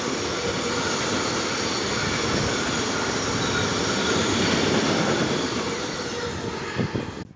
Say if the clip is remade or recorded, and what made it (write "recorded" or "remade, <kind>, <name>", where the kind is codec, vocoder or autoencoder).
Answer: recorded